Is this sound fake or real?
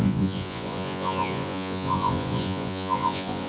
fake